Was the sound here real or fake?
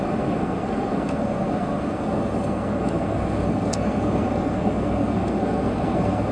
fake